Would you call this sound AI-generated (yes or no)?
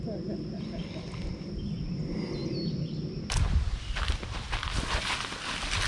no